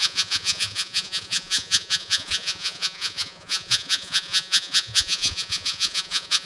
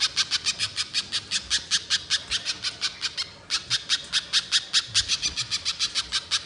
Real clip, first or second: second